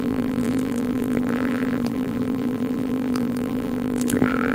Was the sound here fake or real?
fake